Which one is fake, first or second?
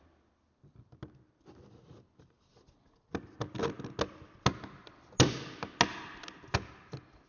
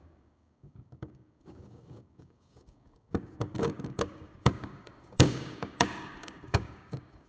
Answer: second